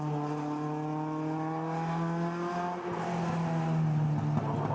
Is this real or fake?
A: real